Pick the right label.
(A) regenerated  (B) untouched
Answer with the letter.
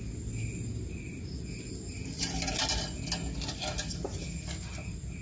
B